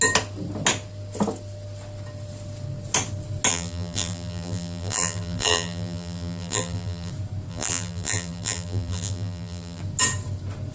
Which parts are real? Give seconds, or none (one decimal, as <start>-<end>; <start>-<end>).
0.0-3.5; 7.1-7.5; 9.8-10.7